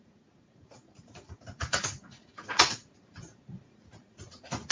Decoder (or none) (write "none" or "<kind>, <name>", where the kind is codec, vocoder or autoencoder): vocoder, Vocos